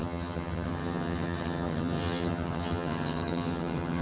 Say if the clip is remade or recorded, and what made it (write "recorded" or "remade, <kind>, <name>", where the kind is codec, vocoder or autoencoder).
remade, vocoder, HiFi-GAN